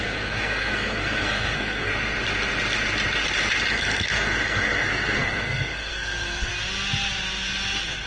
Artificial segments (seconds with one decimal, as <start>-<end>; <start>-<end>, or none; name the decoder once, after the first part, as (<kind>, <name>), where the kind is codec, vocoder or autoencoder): 0.0-1.9 (codec, SNAC); 3.7-6.5